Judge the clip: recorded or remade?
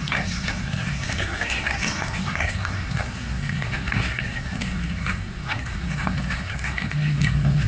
remade